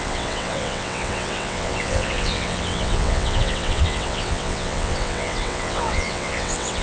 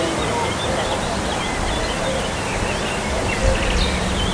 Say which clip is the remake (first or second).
first